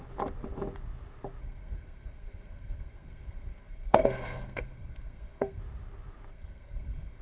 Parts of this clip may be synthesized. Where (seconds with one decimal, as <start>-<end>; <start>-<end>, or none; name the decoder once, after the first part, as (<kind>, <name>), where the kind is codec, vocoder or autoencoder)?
1.4-5.6 (codec, SNAC); 6.3-7.2

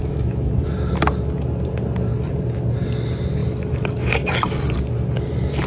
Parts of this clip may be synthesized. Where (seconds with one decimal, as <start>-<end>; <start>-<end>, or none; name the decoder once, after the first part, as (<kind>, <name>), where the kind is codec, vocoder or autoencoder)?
0.0-0.5 (autoencoder, DAC-VAE)

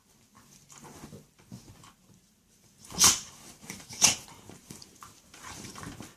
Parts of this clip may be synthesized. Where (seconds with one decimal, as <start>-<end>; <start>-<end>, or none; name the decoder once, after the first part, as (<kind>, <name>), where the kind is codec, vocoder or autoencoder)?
2.0-5.7 (vocoder, BigVGAN v2)